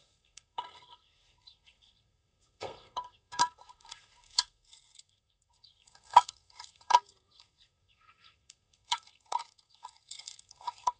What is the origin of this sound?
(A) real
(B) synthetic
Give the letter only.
B